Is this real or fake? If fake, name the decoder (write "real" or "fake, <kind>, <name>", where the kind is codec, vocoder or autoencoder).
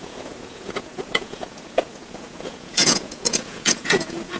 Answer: fake, vocoder, Vocos